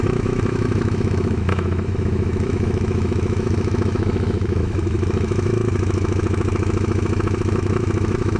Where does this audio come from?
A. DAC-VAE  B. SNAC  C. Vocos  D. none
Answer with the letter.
A